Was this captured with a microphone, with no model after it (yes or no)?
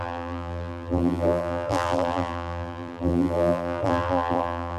no